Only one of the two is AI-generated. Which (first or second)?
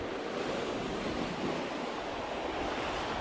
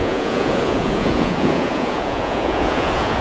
second